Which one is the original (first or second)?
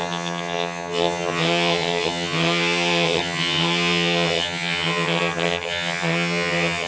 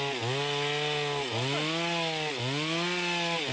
second